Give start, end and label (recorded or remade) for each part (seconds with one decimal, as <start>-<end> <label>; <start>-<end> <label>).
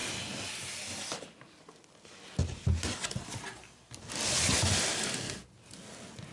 0.0-6.3 recorded